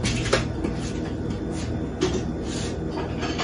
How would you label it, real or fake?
real